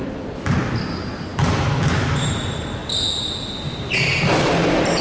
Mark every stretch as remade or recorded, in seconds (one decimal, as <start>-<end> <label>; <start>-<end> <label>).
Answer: 0.0-5.0 recorded